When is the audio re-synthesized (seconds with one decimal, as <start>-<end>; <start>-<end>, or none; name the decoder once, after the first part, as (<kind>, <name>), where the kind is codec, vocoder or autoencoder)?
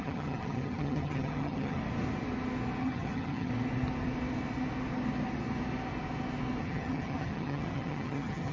0.0-1.8 (vocoder, HiFi-GAN); 2.8-3.5; 6.6-8.5